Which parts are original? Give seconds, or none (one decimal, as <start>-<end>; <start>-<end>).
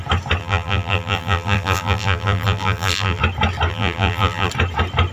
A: 0.0-0.4; 3.2-3.7; 4.5-5.1